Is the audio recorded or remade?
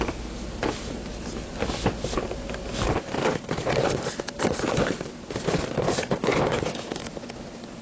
recorded